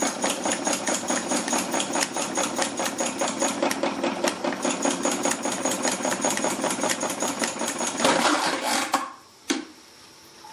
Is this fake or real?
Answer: fake